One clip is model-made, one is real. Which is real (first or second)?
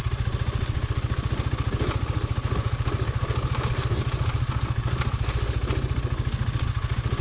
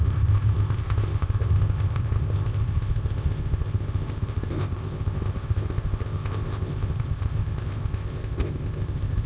first